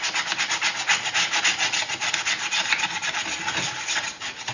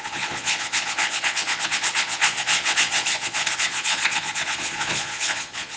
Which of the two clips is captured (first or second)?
first